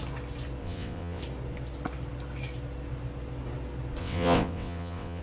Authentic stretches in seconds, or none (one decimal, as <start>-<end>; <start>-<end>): 0.0-0.6; 1.2-4.0

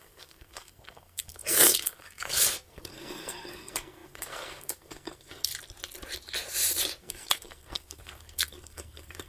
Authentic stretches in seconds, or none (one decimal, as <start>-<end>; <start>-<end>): 5.5-7.0

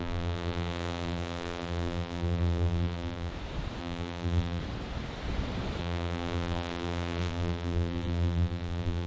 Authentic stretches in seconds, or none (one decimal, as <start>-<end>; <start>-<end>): 3.3-3.8; 4.6-5.8

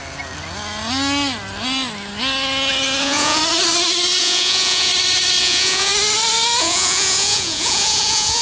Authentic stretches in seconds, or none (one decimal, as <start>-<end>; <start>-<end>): 0.0-3.0; 3.4-4.2; 4.9-5.4; 5.9-6.6

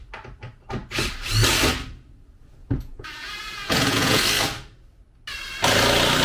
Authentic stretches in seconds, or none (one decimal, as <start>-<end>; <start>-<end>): 0.0-2.6; 4.2-6.2